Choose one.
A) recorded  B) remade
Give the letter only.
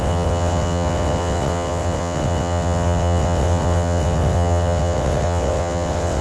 B